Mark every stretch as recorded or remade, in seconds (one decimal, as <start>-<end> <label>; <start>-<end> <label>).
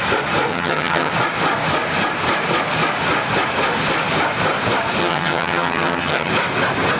0.0-0.5 recorded; 0.5-1.1 remade; 1.1-5.0 recorded; 5.0-6.3 remade; 6.3-7.0 recorded